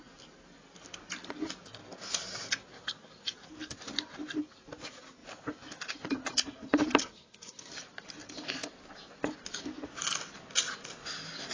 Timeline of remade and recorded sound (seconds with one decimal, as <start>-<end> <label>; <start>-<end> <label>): 0.0-7.0 recorded; 7.0-7.7 remade; 7.7-11.5 recorded